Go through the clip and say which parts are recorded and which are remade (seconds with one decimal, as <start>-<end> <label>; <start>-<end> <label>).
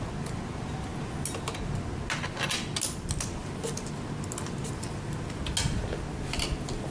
0.0-6.9 recorded